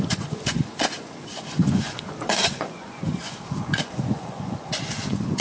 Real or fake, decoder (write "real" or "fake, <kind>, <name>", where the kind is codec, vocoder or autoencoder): fake, vocoder, Vocos